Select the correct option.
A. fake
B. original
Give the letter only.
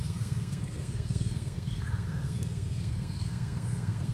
A